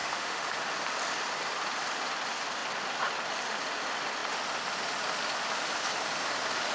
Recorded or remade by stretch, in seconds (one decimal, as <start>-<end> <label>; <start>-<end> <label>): 0.0-0.6 remade; 0.6-6.7 recorded